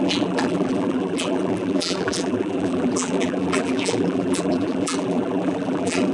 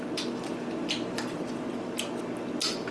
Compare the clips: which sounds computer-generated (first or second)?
first